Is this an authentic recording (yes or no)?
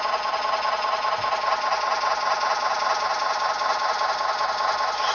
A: yes